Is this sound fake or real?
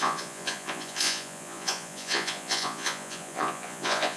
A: fake